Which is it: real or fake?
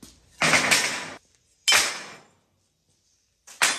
real